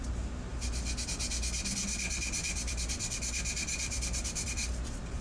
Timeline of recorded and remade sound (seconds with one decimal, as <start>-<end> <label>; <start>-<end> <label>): 0.0-0.5 remade; 0.5-2.1 recorded; 2.1-5.2 remade